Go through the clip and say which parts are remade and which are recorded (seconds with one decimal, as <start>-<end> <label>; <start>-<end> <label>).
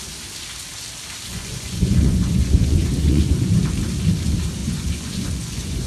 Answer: 0.0-1.3 recorded; 1.3-3.6 remade; 3.6-4.6 recorded; 4.6-5.9 remade